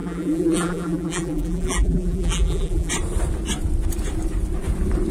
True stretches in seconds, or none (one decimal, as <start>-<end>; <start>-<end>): 2.9-5.1